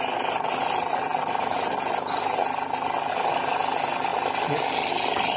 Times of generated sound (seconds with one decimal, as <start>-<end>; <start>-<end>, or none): none